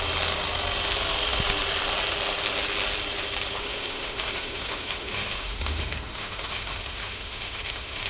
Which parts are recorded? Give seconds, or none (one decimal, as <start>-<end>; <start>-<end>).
0.0-3.6